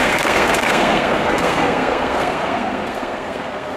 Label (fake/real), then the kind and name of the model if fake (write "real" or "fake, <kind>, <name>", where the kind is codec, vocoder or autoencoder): fake, codec, SNAC